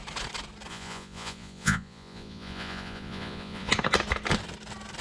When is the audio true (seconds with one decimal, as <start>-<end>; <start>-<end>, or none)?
0.0-0.7; 3.7-5.0